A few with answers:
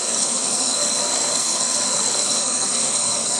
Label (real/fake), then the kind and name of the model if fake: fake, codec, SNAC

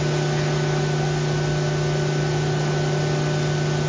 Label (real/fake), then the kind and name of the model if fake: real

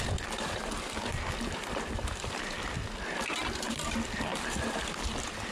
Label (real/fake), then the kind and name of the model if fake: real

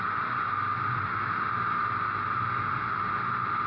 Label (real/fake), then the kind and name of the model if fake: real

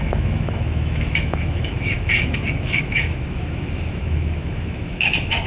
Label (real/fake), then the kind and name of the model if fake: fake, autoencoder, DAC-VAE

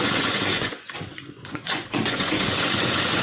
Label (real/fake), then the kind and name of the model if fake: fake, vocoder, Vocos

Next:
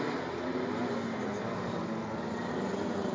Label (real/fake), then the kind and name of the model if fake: real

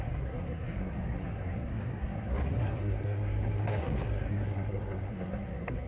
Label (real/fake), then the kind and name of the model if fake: fake, codec, SNAC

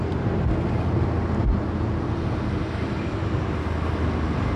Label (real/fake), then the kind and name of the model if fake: real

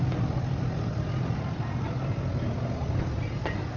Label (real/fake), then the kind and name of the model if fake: real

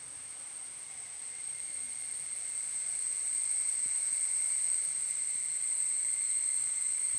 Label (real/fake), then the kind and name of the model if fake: real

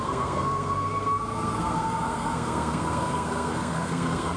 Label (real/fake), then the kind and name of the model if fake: fake, codec, SNAC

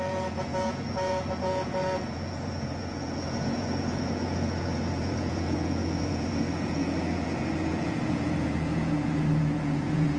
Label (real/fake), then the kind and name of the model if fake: fake, vocoder, Vocos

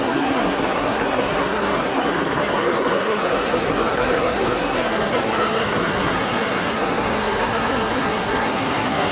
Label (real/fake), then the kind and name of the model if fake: fake, codec, SNAC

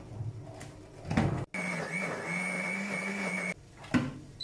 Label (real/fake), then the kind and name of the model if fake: real